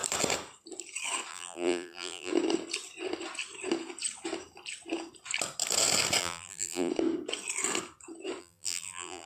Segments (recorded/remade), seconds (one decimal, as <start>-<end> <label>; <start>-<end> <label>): 0.0-1.3 recorded; 1.3-2.3 remade; 2.3-6.2 recorded; 6.2-6.9 remade; 6.9-8.4 recorded; 8.4-9.3 remade